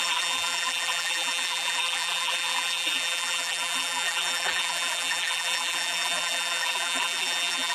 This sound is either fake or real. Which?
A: fake